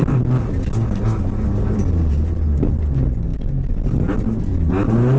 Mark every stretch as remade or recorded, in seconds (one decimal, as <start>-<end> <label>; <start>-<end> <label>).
0.0-5.2 recorded